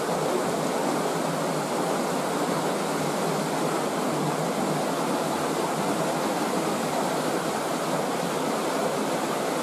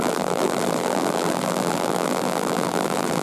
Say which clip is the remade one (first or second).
second